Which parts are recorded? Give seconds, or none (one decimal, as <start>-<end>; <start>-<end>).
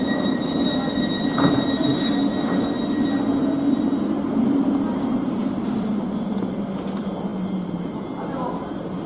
1.9-4.3